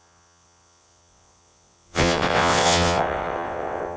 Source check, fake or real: fake